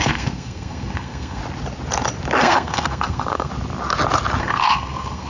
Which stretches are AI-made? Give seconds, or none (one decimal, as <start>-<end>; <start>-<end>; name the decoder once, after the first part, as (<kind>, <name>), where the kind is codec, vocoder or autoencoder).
0.0-1.4 (codec, SNAC); 2.4-3.5; 4.4-5.3